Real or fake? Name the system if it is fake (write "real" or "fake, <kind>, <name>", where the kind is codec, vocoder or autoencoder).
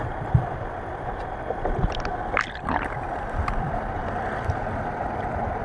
real